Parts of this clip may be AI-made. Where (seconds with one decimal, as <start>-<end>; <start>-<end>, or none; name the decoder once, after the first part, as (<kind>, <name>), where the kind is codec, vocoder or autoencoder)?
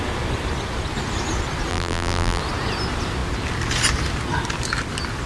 1.7-2.4 (vocoder, BigVGAN v2)